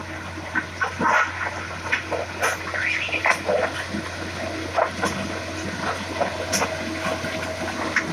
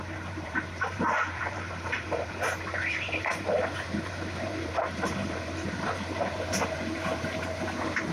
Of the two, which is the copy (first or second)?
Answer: second